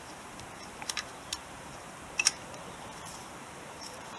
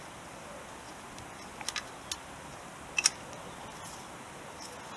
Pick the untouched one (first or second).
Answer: second